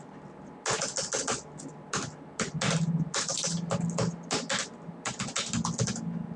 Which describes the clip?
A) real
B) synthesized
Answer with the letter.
A